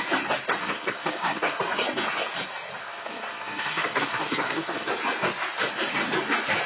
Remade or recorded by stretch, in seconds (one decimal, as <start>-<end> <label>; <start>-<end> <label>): 0.0-0.6 recorded; 0.6-1.6 remade; 1.6-2.8 recorded; 2.8-4.9 remade; 4.9-6.7 recorded